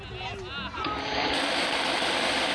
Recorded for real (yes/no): yes